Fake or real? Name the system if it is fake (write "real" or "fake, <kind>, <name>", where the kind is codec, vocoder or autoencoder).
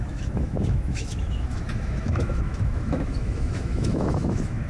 fake, autoencoder, DAC-VAE